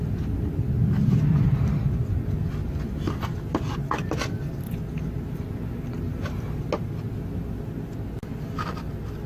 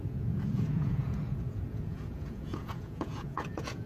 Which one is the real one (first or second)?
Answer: first